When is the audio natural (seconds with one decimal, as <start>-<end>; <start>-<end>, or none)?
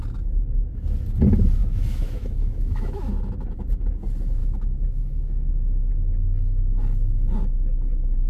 0.0-1.6; 3.1-4.4; 5.9-8.3